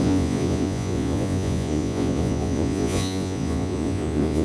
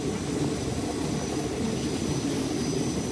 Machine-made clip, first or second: first